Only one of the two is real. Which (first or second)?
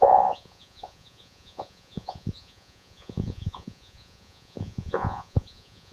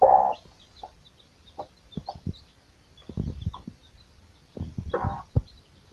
second